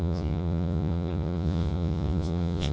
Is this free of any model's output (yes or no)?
no